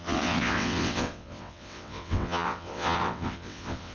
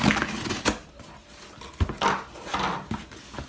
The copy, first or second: first